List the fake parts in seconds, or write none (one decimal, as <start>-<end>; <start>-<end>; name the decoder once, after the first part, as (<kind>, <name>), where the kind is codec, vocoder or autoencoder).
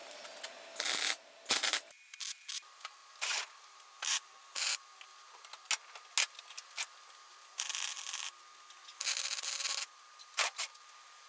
none